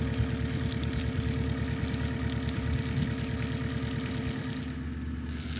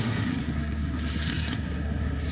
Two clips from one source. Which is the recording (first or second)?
first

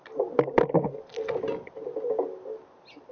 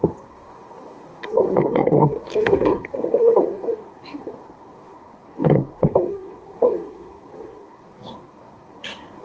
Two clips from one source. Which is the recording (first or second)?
first